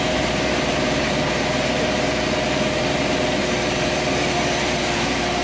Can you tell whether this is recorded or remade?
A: remade